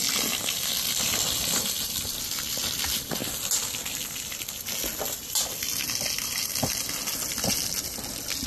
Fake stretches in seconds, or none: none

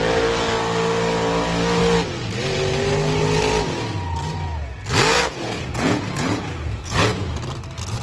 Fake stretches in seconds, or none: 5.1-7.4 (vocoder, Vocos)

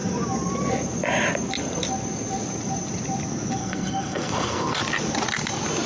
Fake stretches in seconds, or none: 3.6-4.8 (codec, SNAC)

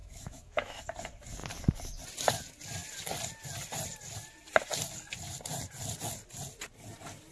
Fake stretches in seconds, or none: 0.0-0.8 (autoencoder, DAC-VAE)